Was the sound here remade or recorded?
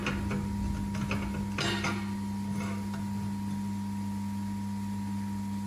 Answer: recorded